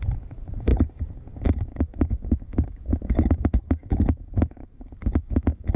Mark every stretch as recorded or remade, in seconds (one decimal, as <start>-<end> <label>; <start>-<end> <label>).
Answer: 0.0-5.8 remade